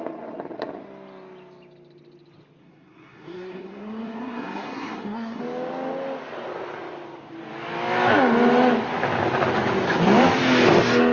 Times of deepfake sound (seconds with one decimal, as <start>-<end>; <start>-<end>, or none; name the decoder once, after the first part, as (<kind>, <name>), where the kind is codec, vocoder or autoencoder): 2.6-5.4 (codec, SNAC)